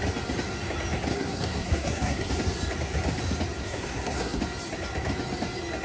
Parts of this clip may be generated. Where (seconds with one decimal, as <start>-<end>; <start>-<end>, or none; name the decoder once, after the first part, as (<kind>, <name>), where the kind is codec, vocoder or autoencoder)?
1.1-2.3 (codec, SNAC); 3.6-4.4